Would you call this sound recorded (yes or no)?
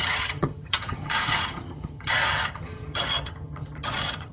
no